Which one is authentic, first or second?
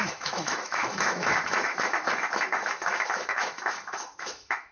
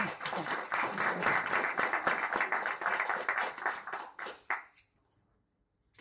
second